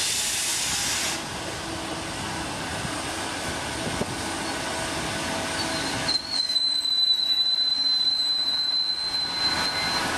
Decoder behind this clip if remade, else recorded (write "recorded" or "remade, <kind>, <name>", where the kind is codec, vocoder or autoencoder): recorded